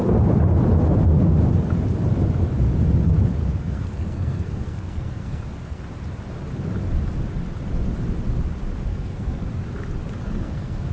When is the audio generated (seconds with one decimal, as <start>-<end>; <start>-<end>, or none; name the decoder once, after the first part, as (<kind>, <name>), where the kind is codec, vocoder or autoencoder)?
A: 3.4-5.8 (codec, SNAC); 8.9-9.5; 10.2-10.9